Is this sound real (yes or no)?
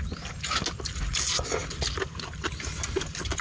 yes